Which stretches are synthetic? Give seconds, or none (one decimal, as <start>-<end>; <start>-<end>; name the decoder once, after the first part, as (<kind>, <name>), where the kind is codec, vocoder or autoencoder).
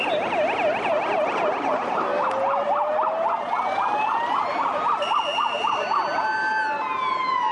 none